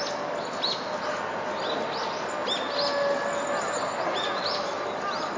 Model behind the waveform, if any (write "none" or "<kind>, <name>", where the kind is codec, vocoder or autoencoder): none